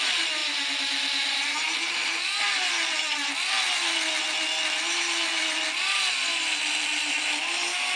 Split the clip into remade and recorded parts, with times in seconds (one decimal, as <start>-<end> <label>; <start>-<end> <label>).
0.0-8.0 recorded